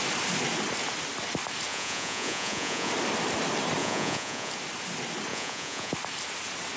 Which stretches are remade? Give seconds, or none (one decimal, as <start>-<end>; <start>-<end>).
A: 1.7-2.9; 3.8-4.5; 5.3-5.9

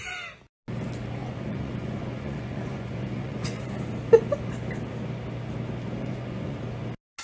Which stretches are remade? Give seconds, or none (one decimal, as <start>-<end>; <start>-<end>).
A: 1.2-3.8; 6.0-6.6

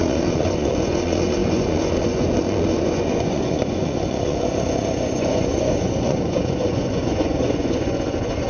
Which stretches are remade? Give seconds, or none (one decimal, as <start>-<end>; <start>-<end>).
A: 0.0-8.5

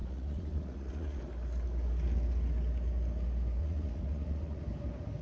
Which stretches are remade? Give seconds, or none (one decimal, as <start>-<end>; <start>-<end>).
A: 0.0-1.2; 3.6-4.6

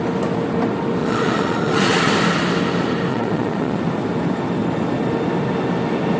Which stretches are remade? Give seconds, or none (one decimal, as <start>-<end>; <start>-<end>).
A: 1.0-2.1; 3.1-3.8

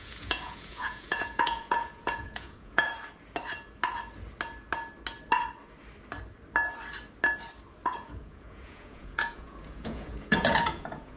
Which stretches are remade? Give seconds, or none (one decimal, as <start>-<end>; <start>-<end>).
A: 0.0-2.9; 8.0-11.2

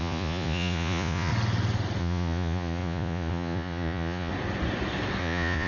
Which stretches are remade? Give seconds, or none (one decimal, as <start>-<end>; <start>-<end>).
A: 0.0-1.3; 2.0-4.3; 5.2-5.7